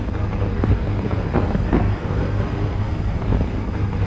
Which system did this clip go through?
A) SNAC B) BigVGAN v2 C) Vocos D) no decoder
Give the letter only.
A